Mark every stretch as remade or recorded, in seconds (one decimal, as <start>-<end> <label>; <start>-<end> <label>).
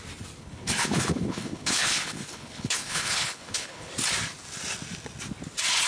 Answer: 0.0-0.4 recorded; 0.4-3.9 remade; 3.9-5.9 recorded